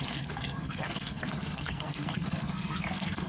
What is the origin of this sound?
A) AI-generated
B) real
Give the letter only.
A